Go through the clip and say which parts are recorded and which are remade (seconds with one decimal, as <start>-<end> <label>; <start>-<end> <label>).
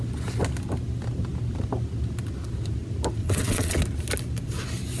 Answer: 0.0-3.2 recorded; 3.2-3.8 remade; 3.8-5.0 recorded